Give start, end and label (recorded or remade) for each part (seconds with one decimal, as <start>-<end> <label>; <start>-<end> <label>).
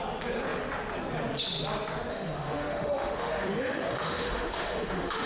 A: 0.0-2.1 recorded; 2.1-5.3 remade